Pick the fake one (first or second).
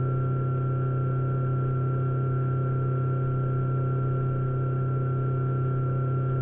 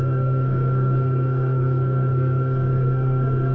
second